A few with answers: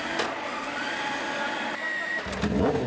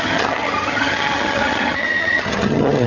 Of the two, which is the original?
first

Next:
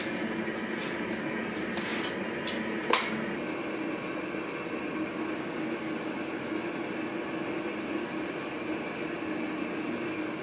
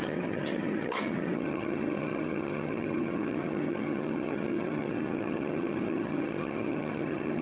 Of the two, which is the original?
first